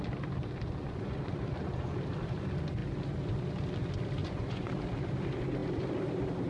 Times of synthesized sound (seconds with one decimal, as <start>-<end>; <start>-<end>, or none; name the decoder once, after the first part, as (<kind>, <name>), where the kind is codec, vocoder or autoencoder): 0.8-1.4 (vocoder, Vocos); 4.2-4.7